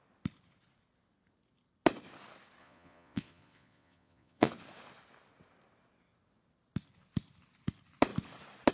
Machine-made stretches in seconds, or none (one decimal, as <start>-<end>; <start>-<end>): 2.6-4.5